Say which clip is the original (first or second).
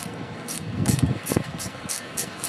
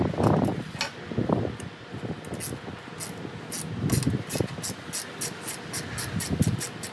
second